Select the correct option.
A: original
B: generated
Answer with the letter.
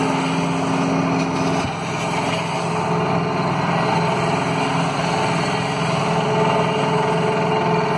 A